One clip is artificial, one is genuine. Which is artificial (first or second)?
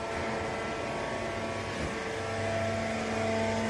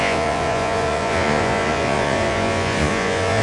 second